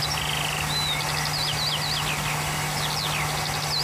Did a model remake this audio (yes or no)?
no